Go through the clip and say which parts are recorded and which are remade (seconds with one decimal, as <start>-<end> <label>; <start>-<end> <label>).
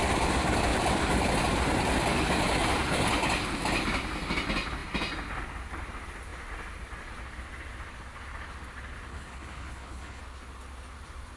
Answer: 0.0-9.1 recorded; 9.1-10.2 remade; 10.2-11.4 recorded